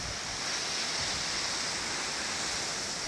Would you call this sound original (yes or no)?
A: yes